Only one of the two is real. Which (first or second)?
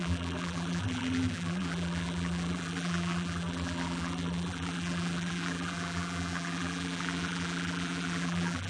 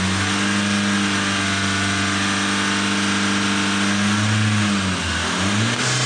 second